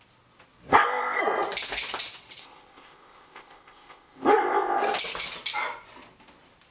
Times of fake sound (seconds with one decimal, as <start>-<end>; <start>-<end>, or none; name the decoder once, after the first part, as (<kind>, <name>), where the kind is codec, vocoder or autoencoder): 0.7-1.2 (codec, ZipCodec); 2.4-4.8